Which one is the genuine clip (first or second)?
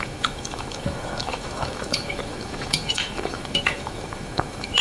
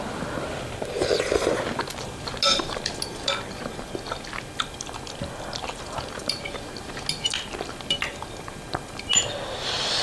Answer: second